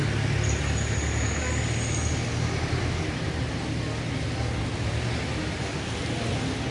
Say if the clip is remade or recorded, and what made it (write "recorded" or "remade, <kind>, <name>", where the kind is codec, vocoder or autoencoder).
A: recorded